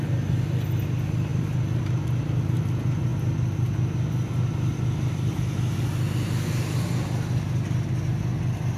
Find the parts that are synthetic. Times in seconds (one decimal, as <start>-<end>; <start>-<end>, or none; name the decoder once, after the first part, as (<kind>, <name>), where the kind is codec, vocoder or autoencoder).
none